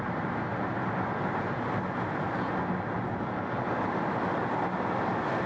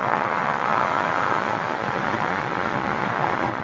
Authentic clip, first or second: first